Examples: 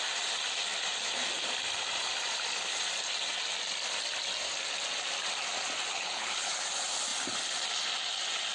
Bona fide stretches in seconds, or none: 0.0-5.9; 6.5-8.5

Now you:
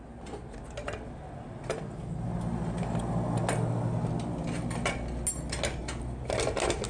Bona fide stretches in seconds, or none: 0.0-6.9

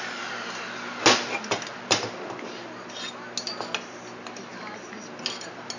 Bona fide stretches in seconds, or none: 0.0-5.8

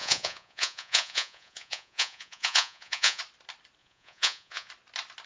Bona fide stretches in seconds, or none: 3.2-3.8; 4.7-5.3

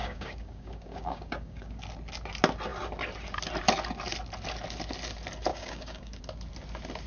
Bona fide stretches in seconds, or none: 1.8-5.5; 6.2-7.1

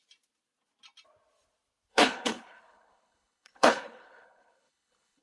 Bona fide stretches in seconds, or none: 0.0-1.9

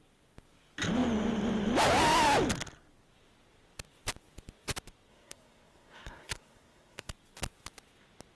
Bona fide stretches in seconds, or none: 0.0-5.1; 7.1-8.4

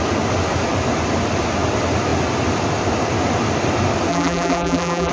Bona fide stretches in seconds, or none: 0.0-4.1